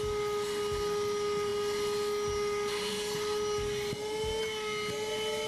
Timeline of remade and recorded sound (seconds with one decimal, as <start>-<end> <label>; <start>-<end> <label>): 0.0-5.5 recorded